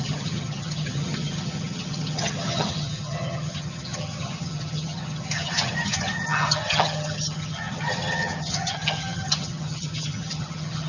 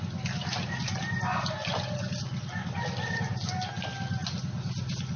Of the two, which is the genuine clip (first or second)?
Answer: second